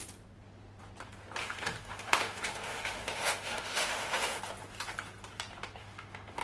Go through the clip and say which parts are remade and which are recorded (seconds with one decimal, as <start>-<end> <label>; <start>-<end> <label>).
0.0-1.4 recorded; 1.4-4.4 remade; 4.4-5.8 recorded; 5.8-6.4 remade